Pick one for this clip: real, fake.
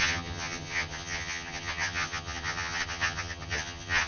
fake